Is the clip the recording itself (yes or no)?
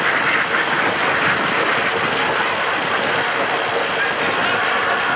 yes